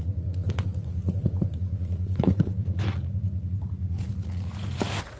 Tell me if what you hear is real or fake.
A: fake